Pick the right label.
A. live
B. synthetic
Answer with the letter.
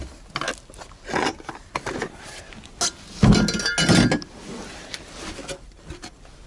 A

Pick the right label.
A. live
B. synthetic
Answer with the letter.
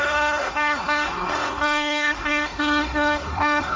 B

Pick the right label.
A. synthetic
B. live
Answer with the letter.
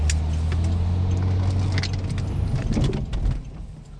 B